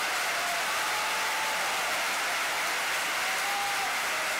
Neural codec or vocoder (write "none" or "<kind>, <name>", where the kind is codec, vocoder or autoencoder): none